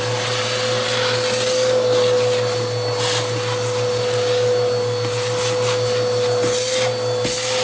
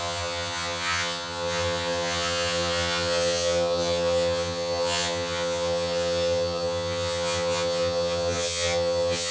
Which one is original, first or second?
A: first